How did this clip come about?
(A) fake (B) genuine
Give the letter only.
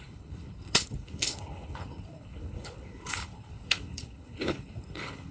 A